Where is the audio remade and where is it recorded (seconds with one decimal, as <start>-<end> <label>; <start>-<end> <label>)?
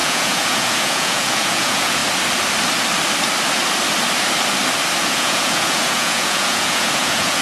0.0-2.0 remade; 2.0-5.1 recorded; 5.1-7.4 remade